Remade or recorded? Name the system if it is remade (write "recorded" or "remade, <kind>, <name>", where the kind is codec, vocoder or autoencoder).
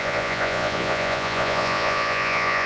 remade, vocoder, Vocos